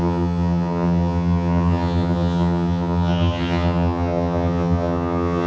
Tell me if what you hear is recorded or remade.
remade